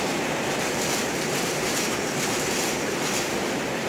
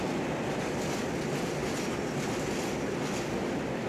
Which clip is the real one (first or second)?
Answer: second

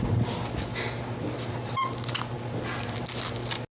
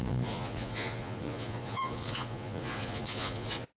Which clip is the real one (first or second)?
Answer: first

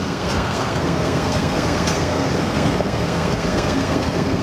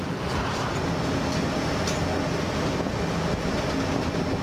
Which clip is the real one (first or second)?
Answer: second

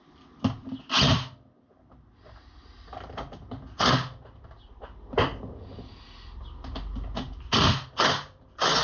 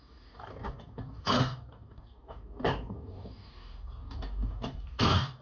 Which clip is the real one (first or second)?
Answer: first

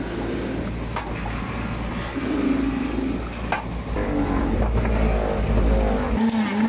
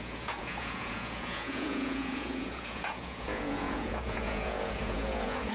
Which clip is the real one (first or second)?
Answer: first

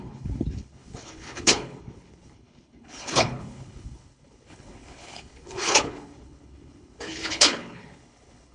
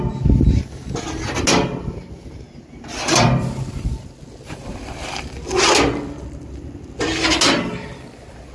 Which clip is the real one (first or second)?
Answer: second